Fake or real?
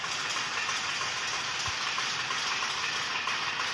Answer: real